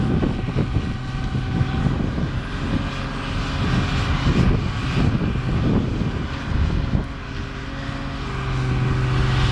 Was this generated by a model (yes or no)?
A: no